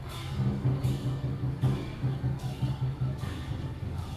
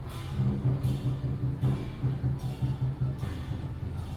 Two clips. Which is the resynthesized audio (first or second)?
first